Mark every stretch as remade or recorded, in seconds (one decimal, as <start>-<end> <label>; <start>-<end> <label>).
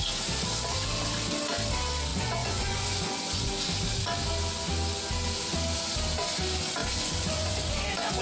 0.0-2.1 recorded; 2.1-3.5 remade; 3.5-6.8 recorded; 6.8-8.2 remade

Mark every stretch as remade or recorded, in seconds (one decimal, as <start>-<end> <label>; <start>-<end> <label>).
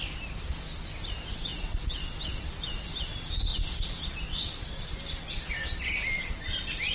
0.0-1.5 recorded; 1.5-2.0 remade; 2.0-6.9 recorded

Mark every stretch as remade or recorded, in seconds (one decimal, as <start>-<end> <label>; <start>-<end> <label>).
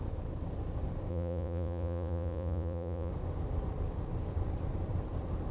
0.0-1.1 recorded; 1.1-3.1 remade; 3.1-5.5 recorded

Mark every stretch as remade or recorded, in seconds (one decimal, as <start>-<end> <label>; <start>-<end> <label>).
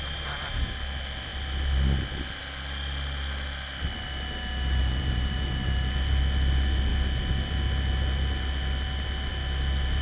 0.0-10.0 recorded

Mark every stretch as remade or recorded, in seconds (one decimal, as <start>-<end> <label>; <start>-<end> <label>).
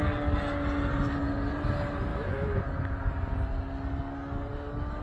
0.0-2.1 recorded; 2.1-2.6 remade; 2.6-5.0 recorded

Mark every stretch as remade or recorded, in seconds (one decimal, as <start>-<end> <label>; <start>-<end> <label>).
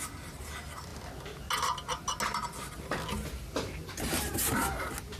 0.0-5.2 recorded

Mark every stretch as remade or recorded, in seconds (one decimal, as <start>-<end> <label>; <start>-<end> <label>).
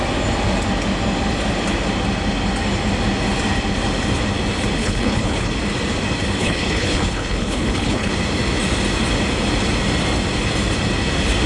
0.0-4.8 recorded; 4.8-5.5 remade; 5.5-6.4 recorded; 6.4-8.1 remade; 8.1-11.5 recorded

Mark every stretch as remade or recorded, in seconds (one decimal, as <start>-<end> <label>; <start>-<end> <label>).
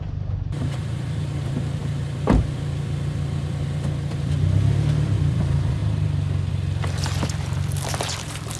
0.0-5.8 remade; 5.8-6.5 recorded; 6.5-8.6 remade